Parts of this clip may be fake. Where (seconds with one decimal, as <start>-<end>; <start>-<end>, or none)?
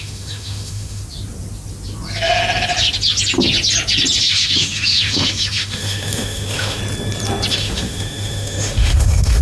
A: 0.0-1.0; 4.2-6.8; 7.5-9.4